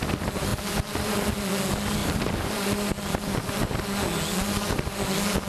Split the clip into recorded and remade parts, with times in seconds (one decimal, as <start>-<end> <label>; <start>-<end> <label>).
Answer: 0.0-2.0 recorded; 2.0-2.9 remade; 2.9-5.5 recorded